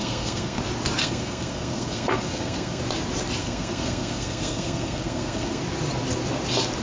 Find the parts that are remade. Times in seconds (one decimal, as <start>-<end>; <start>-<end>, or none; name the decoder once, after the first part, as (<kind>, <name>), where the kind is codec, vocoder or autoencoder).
0.0-0.6 (codec, SNAC); 1.0-2.8; 3.4-5.6